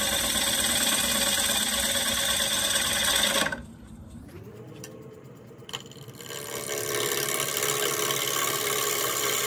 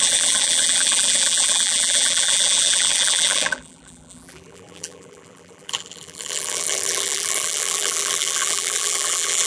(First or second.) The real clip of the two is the first